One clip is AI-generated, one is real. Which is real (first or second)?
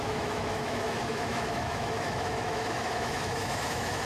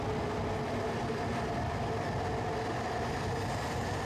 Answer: second